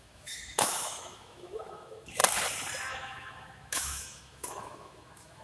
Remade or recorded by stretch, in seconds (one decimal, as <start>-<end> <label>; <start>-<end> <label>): 0.0-2.2 remade; 2.2-2.9 recorded; 2.9-5.4 remade